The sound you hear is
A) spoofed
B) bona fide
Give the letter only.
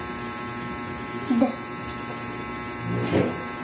B